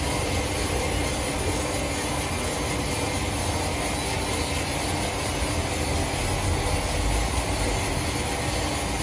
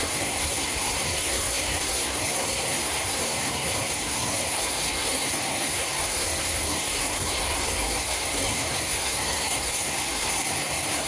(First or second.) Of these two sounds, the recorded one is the first